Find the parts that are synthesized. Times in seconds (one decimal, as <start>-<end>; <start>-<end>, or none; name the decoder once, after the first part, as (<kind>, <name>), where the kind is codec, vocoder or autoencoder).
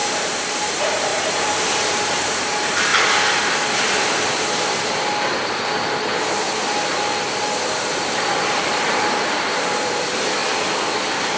0.0-2.9 (vocoder, BigVGAN v2); 7.2-10.4; 11.0-11.4